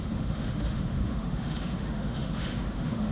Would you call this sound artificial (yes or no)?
yes